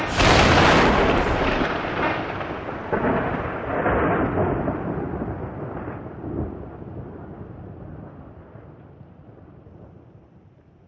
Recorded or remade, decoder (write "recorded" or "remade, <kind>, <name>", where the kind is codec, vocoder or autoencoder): recorded